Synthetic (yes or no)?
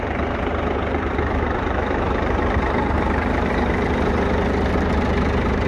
yes